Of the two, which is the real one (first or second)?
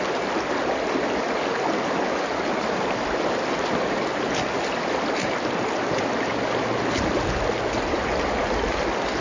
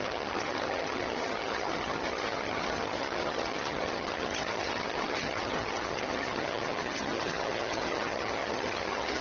first